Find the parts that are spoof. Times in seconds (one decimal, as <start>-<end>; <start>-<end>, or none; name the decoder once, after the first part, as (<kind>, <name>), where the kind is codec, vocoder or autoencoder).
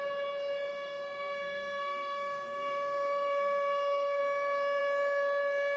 0.7-4.2 (codec, SNAC)